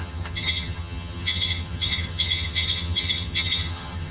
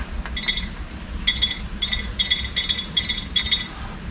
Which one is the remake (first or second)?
first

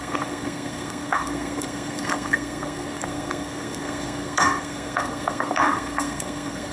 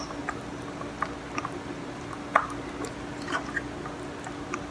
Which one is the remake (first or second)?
first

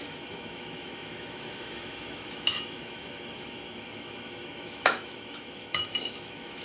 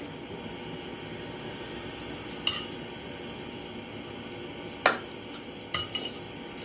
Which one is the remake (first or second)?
first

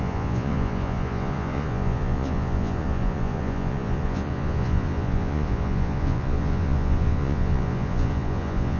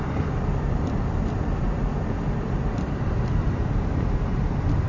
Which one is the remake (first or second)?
first